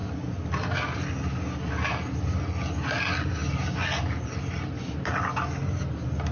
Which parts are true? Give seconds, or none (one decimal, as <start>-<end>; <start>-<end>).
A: 0.0-6.3